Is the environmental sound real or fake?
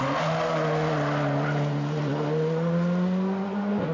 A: real